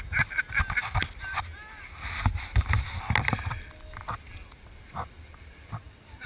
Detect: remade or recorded recorded